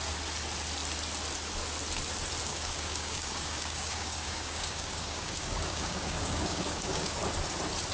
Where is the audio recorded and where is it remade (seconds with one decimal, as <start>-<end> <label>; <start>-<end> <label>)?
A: 0.0-2.5 recorded; 2.5-7.2 remade; 7.2-7.9 recorded